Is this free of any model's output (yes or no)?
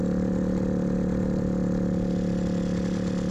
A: yes